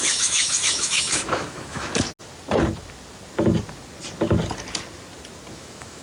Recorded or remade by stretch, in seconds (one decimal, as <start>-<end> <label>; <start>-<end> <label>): 0.0-1.9 remade; 1.9-5.5 recorded; 5.5-6.0 remade